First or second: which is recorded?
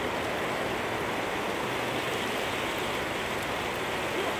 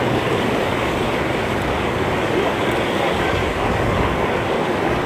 first